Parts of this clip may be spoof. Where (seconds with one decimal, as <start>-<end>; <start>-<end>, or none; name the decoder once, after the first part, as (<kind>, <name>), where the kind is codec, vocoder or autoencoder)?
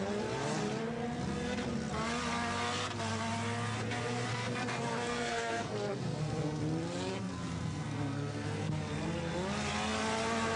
4.3-6.6 (codec, SNAC); 7.1-8.7